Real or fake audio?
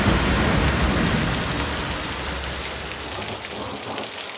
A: real